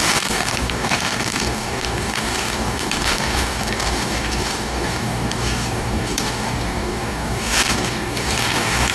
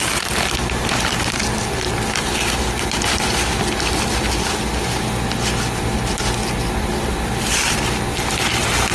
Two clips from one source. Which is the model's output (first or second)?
first